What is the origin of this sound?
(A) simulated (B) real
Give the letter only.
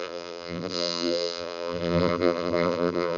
A